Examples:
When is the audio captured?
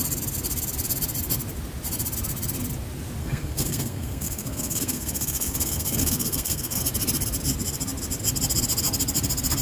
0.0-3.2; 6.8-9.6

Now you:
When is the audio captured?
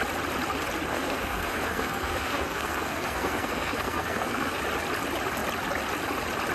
0.0-0.9; 4.6-6.5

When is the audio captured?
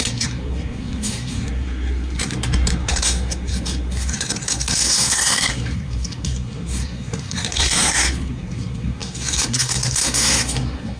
none